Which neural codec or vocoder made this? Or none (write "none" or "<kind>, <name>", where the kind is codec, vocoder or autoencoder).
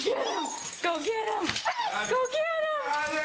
none